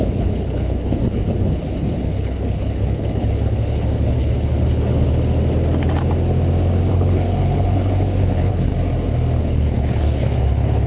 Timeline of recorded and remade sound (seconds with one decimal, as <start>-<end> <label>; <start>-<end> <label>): 0.0-5.1 remade; 5.1-6.9 recorded; 6.9-8.7 remade; 8.7-9.4 recorded; 9.4-10.9 remade